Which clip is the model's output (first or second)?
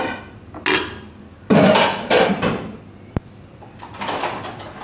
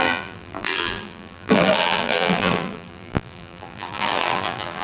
second